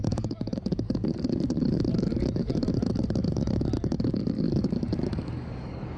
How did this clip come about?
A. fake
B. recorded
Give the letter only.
A